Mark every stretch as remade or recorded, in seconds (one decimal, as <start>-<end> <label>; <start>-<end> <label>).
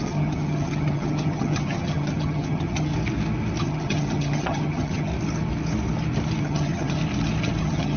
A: 0.0-2.9 remade; 2.9-3.6 recorded; 3.6-5.1 remade; 5.1-6.4 recorded; 6.4-7.0 remade; 7.0-7.6 recorded; 7.6-8.0 remade